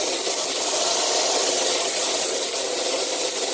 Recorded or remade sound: recorded